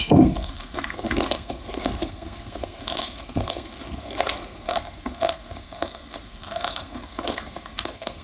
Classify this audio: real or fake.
fake